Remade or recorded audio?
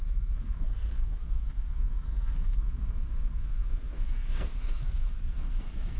remade